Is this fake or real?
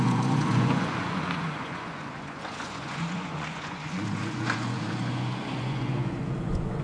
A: fake